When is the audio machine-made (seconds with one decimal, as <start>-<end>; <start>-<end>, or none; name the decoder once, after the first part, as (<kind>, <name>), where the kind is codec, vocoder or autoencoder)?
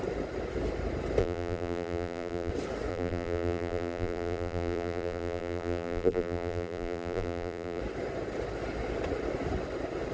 1.2-2.5 (vocoder, BigVGAN v2); 2.9-7.8